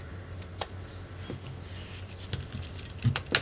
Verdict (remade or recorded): recorded